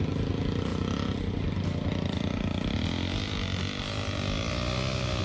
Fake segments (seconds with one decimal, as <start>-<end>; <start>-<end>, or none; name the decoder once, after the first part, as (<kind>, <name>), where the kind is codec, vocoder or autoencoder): none